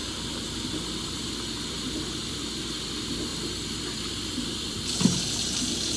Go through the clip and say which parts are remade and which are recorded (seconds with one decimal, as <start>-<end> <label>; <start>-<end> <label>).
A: 0.0-6.0 remade